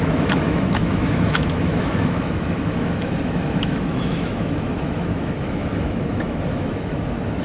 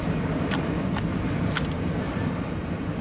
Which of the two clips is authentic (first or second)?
second